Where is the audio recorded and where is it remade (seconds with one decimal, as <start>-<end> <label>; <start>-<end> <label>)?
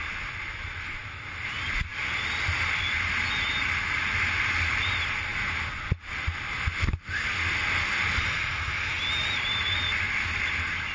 0.0-10.9 recorded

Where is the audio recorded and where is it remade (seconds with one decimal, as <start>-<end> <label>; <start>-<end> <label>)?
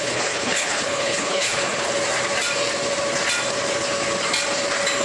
0.0-1.9 remade; 1.9-5.0 recorded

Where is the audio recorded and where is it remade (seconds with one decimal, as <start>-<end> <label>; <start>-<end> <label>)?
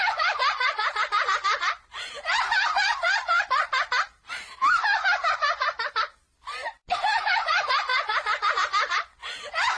0.0-4.6 remade; 4.6-5.9 recorded; 5.9-9.8 remade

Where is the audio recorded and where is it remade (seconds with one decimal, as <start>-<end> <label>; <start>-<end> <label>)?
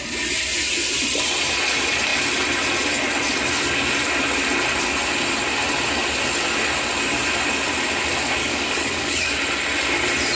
0.0-8.4 recorded; 8.4-9.4 remade; 9.4-10.3 recorded